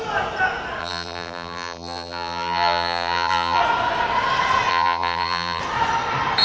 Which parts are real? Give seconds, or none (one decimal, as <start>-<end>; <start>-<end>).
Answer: 0.0-0.8; 3.6-4.7; 5.6-6.4